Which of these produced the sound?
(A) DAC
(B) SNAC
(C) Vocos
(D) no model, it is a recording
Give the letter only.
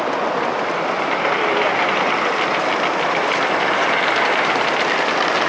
D